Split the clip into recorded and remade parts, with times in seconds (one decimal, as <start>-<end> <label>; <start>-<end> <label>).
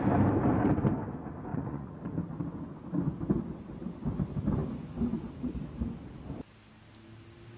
0.0-1.5 recorded; 1.5-2.0 remade; 2.0-7.6 recorded